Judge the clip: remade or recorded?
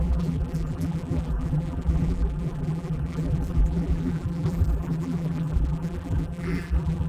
remade